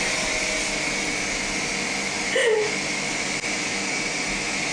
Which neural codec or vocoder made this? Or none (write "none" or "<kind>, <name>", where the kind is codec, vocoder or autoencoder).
none